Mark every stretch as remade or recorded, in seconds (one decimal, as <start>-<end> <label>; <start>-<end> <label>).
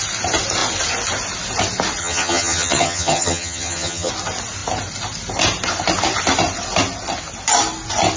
0.0-2.0 recorded; 2.0-4.1 remade; 4.1-8.2 recorded